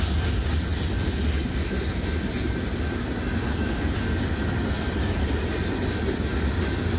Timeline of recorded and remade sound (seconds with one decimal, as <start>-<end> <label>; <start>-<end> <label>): 0.0-2.5 recorded; 2.5-7.0 remade